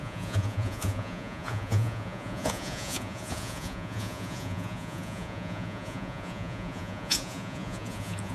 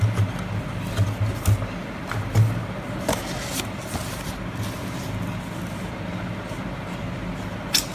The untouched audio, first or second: second